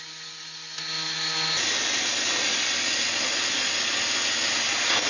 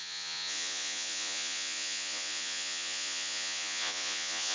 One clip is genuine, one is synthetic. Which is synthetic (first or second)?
second